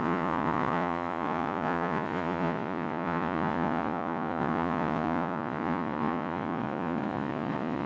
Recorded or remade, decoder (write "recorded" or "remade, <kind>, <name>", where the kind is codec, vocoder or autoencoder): remade, vocoder, Vocos